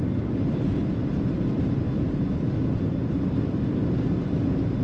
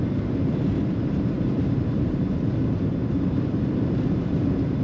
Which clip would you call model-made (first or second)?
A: second